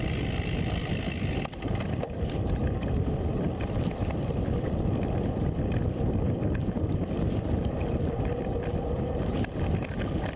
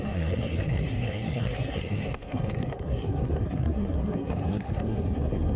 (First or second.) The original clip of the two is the first